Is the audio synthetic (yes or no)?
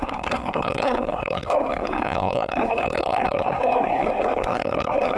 yes